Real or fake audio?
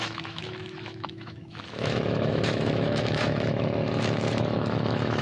fake